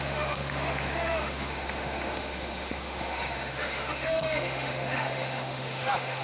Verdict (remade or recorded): remade